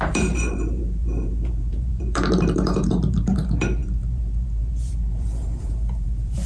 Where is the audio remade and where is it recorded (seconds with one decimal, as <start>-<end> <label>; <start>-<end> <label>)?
0.0-6.5 remade